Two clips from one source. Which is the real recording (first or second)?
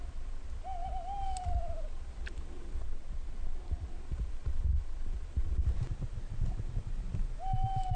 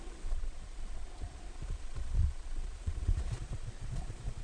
first